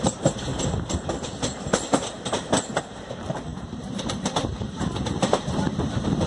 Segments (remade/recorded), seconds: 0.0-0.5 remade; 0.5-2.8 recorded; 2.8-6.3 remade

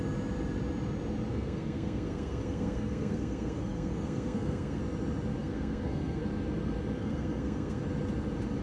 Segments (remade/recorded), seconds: 0.0-1.3 recorded; 1.3-4.8 remade; 4.8-5.4 recorded; 5.4-6.2 remade; 6.2-7.0 recorded; 7.0-7.8 remade; 7.8-8.6 recorded

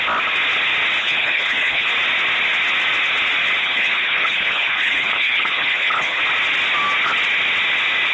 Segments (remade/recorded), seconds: 0.0-1.0 recorded; 1.0-1.9 remade; 1.9-3.6 recorded; 3.6-6.2 remade; 6.2-8.1 recorded

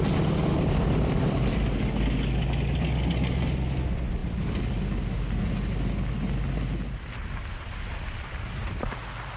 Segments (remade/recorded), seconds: 0.0-9.4 recorded